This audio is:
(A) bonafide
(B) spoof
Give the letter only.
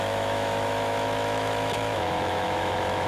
B